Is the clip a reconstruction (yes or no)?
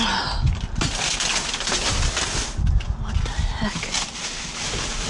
no